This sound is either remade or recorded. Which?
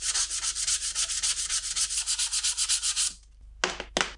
recorded